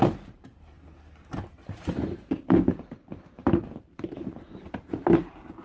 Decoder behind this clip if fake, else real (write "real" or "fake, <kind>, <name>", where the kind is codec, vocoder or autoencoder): fake, vocoder, BigVGAN v2